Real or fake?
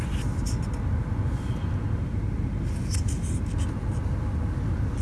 real